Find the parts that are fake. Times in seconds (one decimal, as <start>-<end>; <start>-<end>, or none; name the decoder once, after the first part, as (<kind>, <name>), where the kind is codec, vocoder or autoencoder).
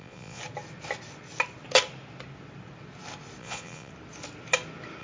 0.0-0.4 (vocoder, Vocos); 3.4-3.9